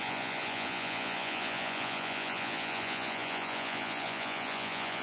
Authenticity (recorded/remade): remade